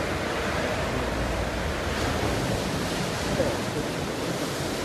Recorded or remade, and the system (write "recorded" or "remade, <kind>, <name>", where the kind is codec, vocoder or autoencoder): remade, vocoder, BigVGAN v2